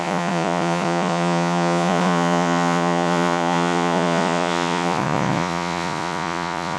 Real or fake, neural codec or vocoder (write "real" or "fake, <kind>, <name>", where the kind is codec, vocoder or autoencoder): fake, vocoder, Vocos